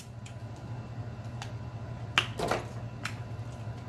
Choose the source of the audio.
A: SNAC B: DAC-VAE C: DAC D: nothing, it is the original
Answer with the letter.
D